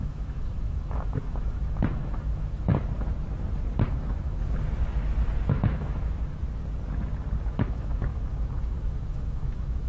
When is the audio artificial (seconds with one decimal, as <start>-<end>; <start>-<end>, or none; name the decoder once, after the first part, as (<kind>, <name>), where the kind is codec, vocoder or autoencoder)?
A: 0.0-2.7 (autoencoder, DAC-VAE); 3.9-4.4; 5.5-6.4; 7.4-9.9